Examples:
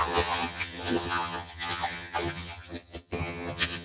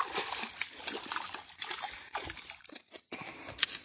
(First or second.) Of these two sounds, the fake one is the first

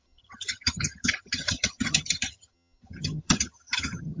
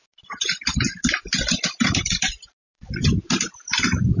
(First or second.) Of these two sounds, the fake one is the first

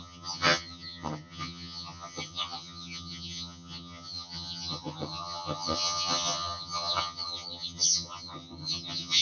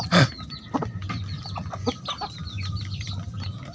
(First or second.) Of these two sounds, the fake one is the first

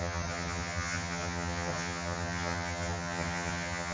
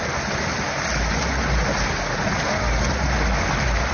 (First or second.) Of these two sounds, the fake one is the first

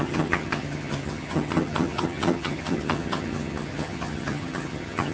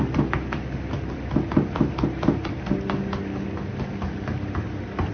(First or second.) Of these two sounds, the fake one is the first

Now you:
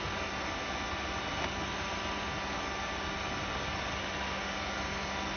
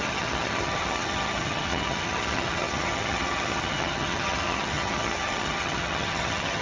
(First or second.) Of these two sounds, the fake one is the second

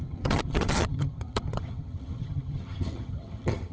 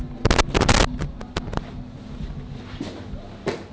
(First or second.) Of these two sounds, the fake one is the first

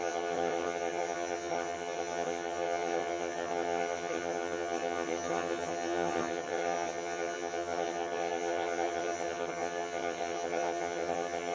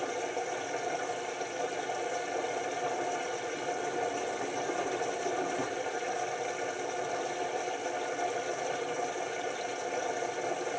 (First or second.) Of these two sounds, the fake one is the first